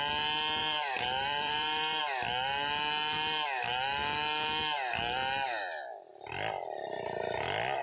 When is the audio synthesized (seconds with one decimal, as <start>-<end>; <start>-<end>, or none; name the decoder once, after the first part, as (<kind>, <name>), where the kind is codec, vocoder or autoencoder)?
0.6-2.0 (vocoder, BigVGAN v2)